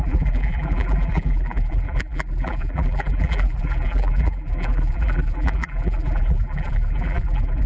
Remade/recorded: remade